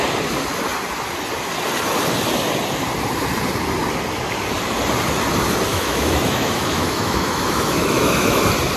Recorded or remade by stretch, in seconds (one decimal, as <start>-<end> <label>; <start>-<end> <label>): 0.0-5.7 recorded; 5.7-8.4 remade; 8.4-8.8 recorded